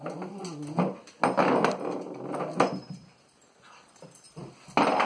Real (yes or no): yes